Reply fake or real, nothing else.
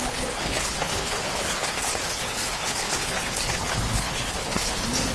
fake